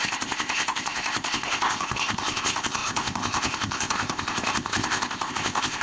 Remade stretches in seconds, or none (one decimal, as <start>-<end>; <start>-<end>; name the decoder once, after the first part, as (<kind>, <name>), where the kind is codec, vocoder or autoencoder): 0.0-5.8 (codec, ZipCodec)